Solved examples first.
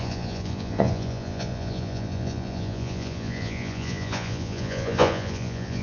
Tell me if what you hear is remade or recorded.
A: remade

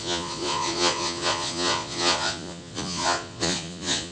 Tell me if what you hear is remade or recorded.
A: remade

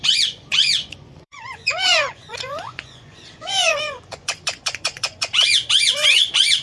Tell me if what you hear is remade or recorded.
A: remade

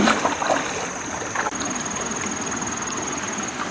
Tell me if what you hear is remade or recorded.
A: recorded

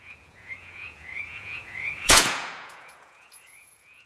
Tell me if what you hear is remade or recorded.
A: remade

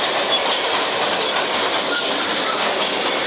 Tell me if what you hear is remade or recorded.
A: recorded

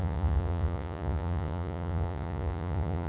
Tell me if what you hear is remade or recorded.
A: remade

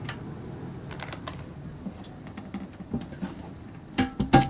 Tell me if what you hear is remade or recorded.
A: recorded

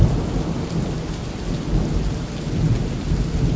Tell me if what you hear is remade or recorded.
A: recorded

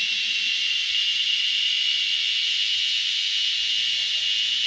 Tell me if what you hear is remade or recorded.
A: recorded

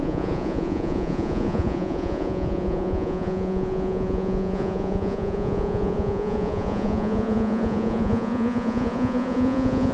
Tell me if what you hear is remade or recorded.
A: remade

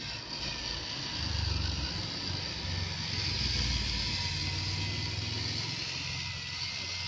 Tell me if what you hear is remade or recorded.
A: recorded